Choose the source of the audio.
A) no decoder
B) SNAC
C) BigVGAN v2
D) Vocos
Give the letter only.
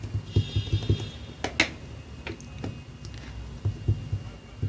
A